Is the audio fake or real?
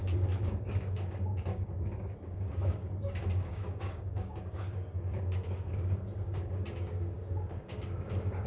fake